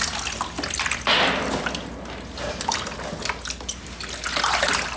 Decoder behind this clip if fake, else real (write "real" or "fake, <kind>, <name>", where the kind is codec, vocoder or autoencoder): real